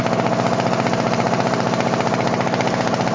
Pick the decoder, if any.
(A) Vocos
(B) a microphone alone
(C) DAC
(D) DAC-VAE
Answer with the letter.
B